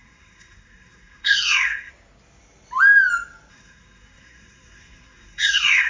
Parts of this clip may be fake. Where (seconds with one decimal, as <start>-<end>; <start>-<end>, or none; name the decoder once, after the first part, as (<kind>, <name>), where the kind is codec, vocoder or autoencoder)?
0.0-1.9 (codec, SNAC); 3.5-5.9